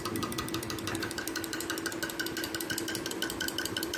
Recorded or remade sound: recorded